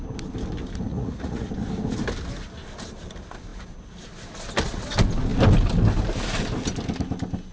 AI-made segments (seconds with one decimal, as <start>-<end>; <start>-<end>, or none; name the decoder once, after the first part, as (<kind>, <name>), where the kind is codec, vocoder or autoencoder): 0.9-1.5 (vocoder, Vocos)